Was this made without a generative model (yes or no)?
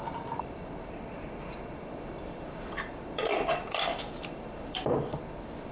no